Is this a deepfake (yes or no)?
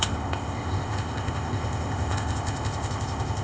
yes